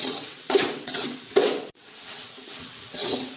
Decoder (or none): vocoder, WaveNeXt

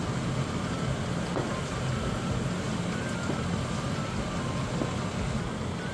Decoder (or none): none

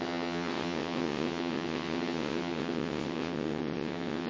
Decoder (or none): vocoder, WaveNeXt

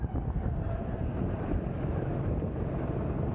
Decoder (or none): none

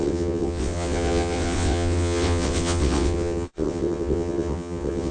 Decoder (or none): vocoder, WaveNeXt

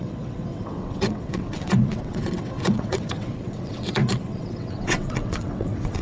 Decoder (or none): vocoder, WaveNeXt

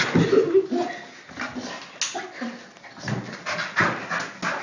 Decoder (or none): none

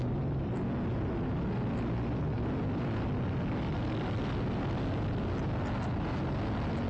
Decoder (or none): none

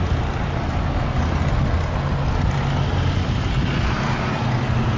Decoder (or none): none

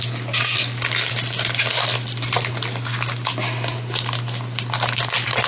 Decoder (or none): none